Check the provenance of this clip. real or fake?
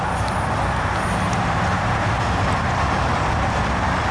real